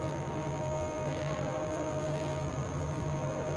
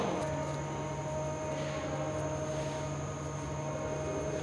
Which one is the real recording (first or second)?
second